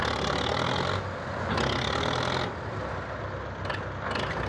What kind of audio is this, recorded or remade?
recorded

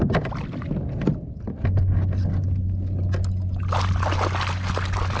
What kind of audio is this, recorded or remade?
recorded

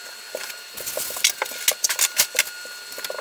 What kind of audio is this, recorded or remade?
recorded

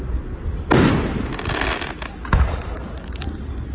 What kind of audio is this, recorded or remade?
recorded